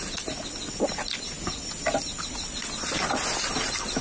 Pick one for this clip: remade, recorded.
recorded